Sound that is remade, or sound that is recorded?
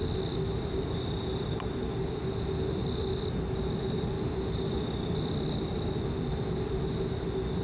recorded